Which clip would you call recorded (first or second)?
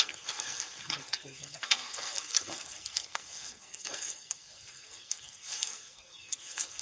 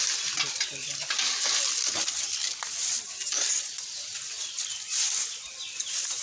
second